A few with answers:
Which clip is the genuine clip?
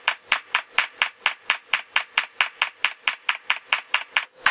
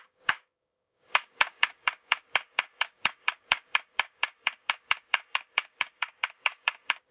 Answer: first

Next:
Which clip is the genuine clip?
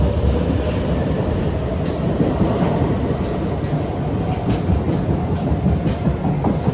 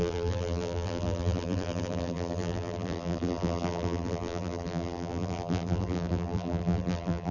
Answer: first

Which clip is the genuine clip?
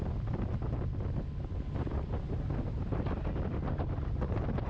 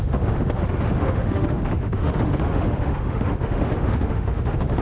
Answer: first